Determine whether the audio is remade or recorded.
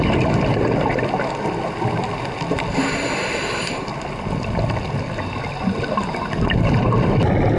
recorded